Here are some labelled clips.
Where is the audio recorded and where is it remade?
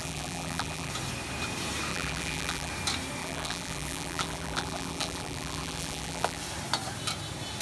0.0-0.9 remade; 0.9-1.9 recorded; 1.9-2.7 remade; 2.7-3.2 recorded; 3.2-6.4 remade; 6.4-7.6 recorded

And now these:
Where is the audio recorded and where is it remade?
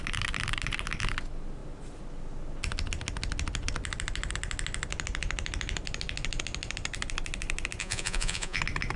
0.0-7.8 recorded; 7.8-8.6 remade; 8.6-9.0 recorded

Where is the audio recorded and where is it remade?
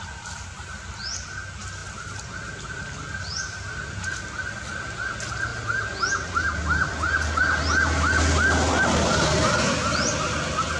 0.0-10.8 recorded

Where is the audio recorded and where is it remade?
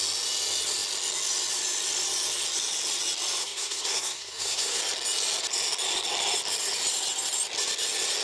0.0-3.4 recorded; 3.4-4.8 remade; 4.8-8.2 recorded